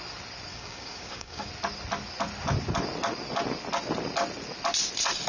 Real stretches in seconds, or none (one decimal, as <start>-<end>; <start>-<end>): 0.0-0.5; 1.5-5.3